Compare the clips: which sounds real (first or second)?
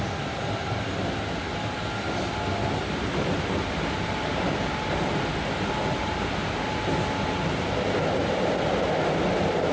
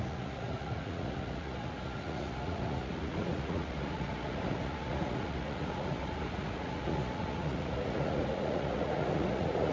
first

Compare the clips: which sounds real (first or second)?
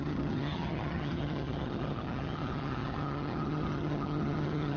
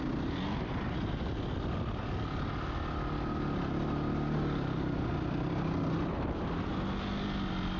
second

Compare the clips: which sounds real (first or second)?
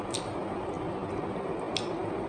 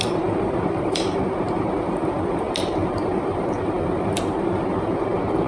first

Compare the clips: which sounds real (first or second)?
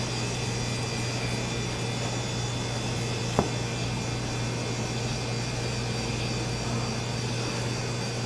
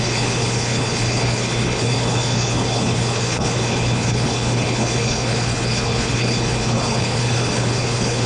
first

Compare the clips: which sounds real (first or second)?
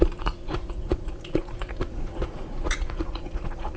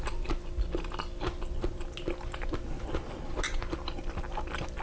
second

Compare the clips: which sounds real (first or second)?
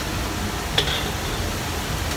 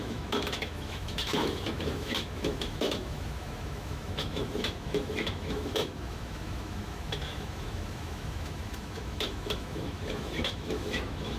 first